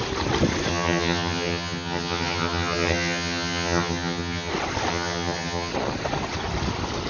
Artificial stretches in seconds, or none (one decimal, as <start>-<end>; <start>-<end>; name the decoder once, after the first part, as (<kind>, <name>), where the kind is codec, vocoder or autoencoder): 0.7-4.5 (vocoder, HiFi-GAN); 4.9-5.7

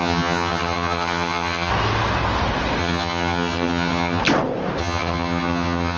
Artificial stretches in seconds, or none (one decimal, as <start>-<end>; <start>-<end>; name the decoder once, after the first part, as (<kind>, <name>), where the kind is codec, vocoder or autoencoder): 0.0-1.7 (vocoder, HiFi-GAN); 2.8-4.2; 4.8-6.0

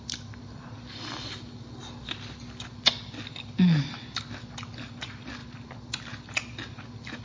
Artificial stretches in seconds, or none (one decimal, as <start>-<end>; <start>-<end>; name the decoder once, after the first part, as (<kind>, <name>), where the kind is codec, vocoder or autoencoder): none

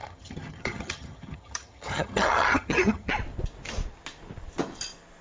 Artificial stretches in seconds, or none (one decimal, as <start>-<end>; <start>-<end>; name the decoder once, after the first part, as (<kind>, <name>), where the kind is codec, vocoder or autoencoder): 0.0-3.1 (vocoder, HiFi-GAN)